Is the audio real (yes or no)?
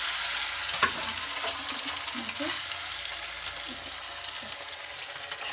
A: yes